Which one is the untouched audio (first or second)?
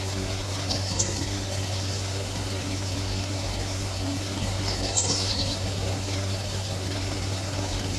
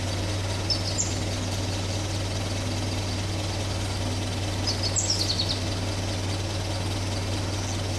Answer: second